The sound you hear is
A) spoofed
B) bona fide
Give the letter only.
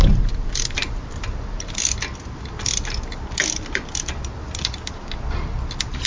B